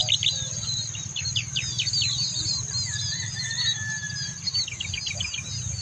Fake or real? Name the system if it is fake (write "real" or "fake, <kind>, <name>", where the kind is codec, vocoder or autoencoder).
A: real